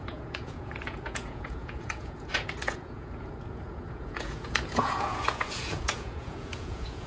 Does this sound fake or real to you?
fake